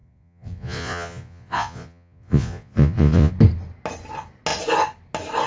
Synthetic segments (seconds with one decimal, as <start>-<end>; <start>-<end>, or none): 0.0-3.3